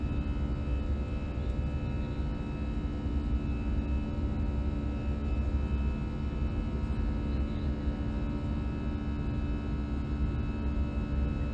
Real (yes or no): yes